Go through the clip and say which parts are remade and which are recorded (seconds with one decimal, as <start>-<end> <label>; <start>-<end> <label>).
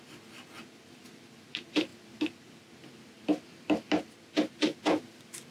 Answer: 0.0-5.5 recorded